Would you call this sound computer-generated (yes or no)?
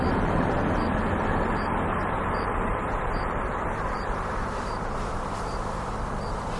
yes